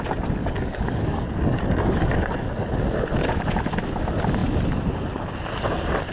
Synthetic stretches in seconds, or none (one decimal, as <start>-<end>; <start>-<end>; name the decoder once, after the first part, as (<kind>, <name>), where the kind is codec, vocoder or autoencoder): 0.4-2.7 (codec, DAC)